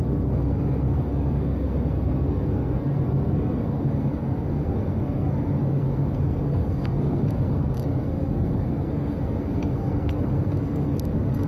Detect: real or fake fake